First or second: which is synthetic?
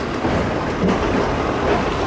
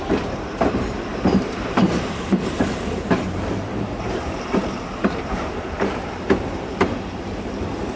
second